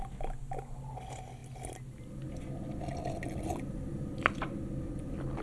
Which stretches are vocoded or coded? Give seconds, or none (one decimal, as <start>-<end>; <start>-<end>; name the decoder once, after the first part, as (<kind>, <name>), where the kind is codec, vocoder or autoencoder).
none